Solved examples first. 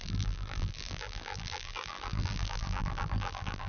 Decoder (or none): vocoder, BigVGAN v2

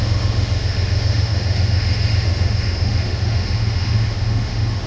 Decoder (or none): autoencoder, DAC-VAE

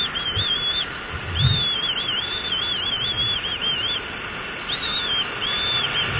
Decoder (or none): none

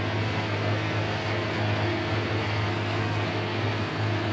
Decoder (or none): codec, SNAC